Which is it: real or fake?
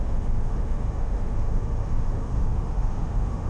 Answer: fake